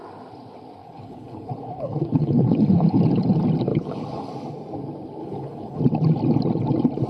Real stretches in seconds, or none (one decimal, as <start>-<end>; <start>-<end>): 0.0-0.8; 3.0-3.7; 4.3-5.2; 5.8-7.1